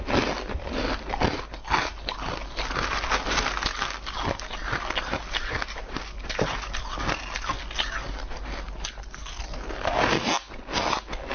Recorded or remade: recorded